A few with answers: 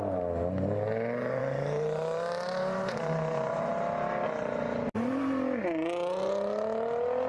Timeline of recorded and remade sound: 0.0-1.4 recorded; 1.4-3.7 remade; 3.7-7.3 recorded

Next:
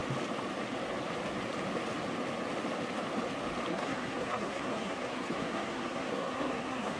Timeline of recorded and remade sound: 0.0-3.7 recorded; 3.7-7.0 remade

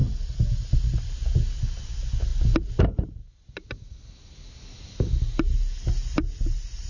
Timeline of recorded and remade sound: 0.0-6.9 recorded

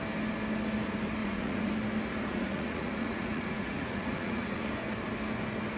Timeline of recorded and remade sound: 0.0-1.2 recorded; 1.2-1.7 remade; 1.7-2.3 recorded; 2.3-4.7 remade; 4.7-5.8 recorded

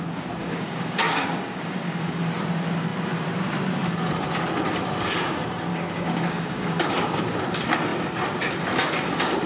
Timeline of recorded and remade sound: 0.0-0.4 recorded; 0.4-2.2 remade; 2.2-5.7 recorded; 5.7-6.9 remade; 6.9-9.5 recorded

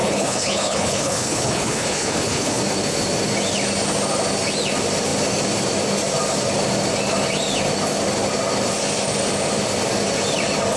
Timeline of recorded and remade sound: 0.0-2.6 remade; 2.6-10.8 recorded

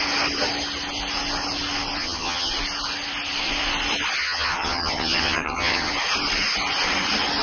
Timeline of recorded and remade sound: 0.0-2.0 recorded; 2.0-2.5 remade; 2.5-4.2 recorded; 4.2-5.9 remade; 5.9-7.4 recorded